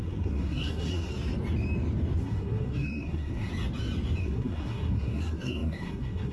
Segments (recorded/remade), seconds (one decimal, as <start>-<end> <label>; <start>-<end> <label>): 0.0-1.1 remade; 1.1-2.2 recorded; 2.2-3.5 remade; 3.5-4.2 recorded; 4.2-6.3 remade